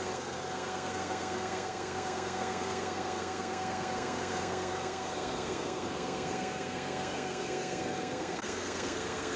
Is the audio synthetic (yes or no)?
yes